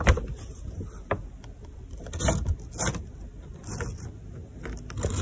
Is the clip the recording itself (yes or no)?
yes